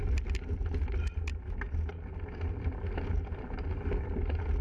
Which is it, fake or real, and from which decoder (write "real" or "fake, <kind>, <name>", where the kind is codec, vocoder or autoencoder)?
real